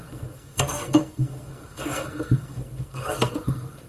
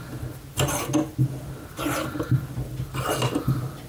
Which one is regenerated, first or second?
first